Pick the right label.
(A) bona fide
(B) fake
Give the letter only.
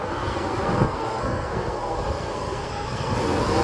B